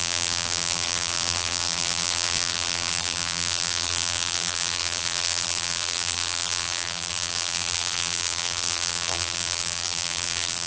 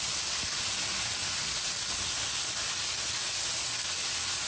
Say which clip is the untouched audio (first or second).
second